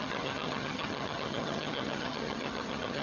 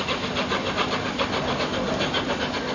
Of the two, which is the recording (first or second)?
second